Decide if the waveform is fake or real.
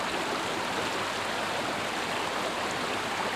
real